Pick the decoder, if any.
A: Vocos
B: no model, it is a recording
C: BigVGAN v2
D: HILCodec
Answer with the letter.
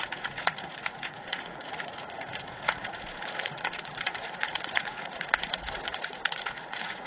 A